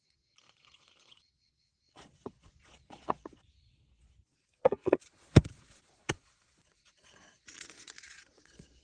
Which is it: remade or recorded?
remade